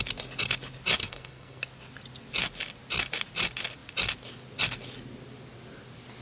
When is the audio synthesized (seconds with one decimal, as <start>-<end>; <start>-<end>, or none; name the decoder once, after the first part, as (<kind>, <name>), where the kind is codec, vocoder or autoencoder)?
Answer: 1.0-1.6 (codec, SNAC)